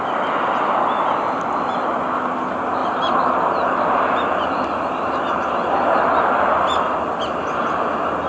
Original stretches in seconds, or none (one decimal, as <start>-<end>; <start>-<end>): 0.0-8.3